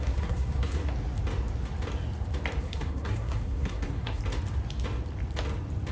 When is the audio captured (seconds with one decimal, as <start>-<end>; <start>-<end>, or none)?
0.8-2.6; 4.2-5.9